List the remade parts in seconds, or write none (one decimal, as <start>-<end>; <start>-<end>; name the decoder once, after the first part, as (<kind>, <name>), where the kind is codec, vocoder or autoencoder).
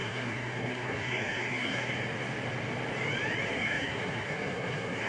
0.0-1.9 (codec, SNAC); 3.5-5.1